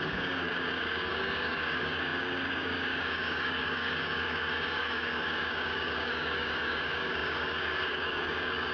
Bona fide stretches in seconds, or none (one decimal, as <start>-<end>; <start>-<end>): none